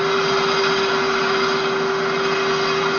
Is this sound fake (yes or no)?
no